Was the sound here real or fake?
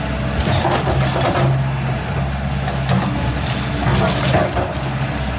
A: real